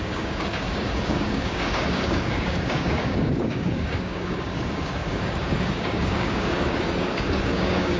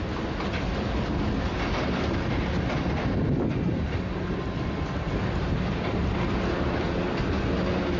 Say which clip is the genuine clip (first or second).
second